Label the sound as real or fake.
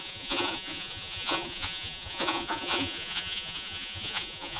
fake